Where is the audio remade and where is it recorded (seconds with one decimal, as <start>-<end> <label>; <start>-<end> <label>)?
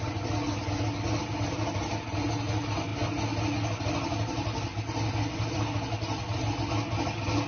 0.0-7.5 recorded